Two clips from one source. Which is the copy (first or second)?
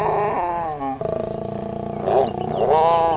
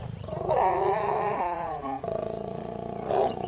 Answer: second